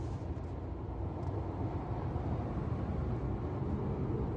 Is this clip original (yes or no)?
yes